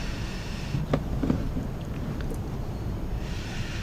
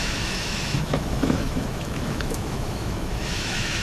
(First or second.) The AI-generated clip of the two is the second